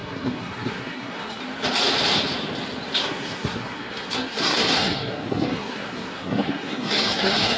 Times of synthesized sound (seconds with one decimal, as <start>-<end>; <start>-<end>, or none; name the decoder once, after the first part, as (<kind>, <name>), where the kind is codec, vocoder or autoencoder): 0.0-1.4 (codec, SNAC); 3.0-7.6